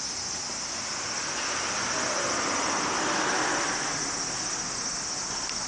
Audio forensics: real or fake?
real